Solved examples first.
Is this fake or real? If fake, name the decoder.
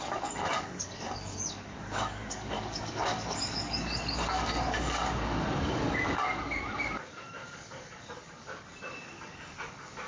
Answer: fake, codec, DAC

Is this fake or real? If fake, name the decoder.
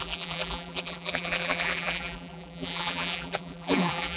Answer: fake, vocoder, BigVGAN v2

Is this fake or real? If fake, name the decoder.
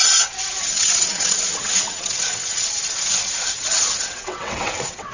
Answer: fake, vocoder, WaveNeXt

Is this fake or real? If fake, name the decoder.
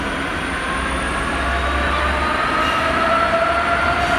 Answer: real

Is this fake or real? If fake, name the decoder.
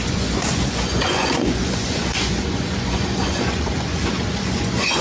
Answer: fake, vocoder, Vocos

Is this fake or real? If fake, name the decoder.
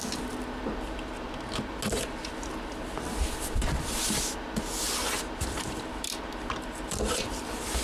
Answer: real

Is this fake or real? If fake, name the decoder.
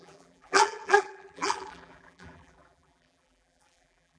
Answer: fake, vocoder, BigVGAN v2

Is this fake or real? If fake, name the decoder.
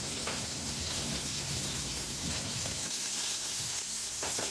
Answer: fake, codec, SNAC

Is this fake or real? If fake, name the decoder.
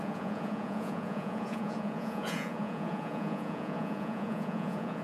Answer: fake, vocoder, Vocos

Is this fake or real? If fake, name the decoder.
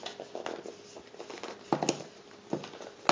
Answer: real